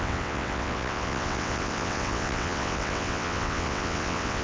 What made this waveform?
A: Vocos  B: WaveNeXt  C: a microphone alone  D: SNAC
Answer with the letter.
B